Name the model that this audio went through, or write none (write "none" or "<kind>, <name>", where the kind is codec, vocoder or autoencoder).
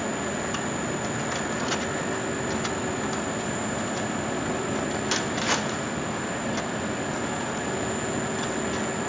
none